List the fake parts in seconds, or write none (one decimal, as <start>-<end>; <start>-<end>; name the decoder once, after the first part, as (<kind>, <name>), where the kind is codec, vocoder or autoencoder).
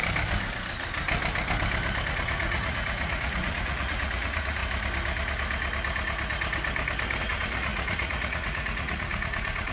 2.1-4.6 (vocoder, Vocos); 7.2-9.7